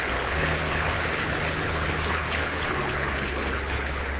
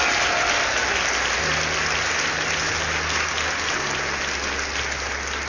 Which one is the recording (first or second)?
second